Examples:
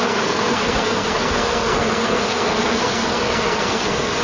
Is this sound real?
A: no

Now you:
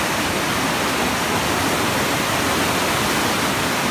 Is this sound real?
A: yes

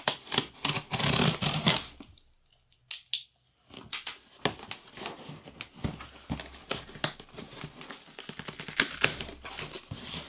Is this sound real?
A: yes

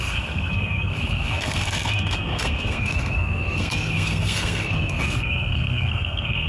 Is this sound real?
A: no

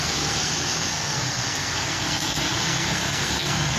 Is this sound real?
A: no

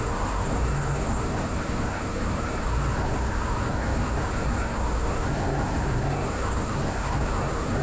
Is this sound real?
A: no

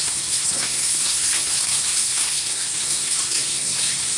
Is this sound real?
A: no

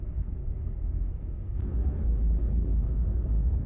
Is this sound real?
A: no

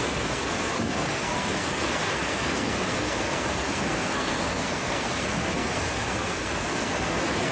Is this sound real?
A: no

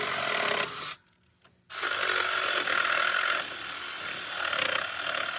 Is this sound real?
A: yes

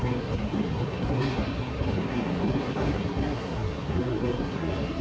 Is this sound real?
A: no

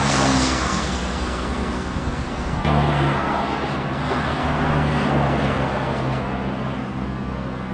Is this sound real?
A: no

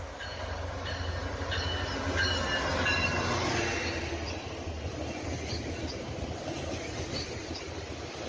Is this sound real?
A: yes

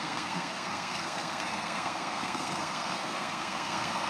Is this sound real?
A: no